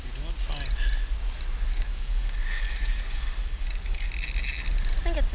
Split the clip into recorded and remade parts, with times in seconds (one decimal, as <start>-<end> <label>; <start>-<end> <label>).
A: 0.0-1.7 recorded; 1.7-4.1 remade; 4.1-5.3 recorded